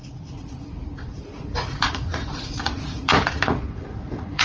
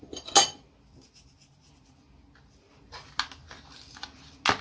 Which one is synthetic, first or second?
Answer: first